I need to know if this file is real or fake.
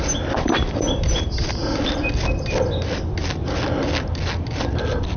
real